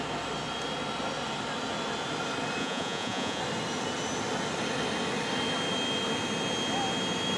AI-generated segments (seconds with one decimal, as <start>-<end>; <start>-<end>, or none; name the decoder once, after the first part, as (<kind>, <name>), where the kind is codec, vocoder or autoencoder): 2.6-3.4 (vocoder, Vocos)